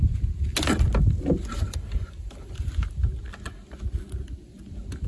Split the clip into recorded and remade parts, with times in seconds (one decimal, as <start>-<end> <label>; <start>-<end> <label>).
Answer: 0.0-1.5 recorded; 1.5-2.7 remade; 2.7-5.1 recorded